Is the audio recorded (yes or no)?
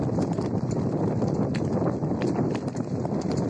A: yes